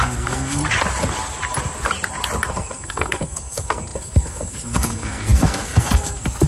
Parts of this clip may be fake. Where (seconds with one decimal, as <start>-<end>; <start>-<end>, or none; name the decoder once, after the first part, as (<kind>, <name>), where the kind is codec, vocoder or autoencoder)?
0.0-0.6 (codec, SNAC); 2.5-6.5